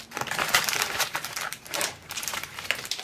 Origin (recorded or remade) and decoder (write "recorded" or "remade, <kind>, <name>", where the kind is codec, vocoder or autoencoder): remade, vocoder, BigVGAN v2